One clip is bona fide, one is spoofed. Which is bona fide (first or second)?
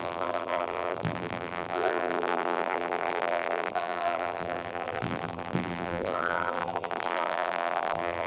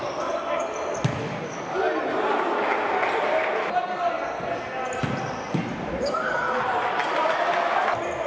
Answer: second